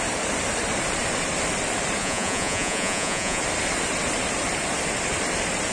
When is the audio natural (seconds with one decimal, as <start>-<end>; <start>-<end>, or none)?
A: 0.0-2.0; 3.4-5.7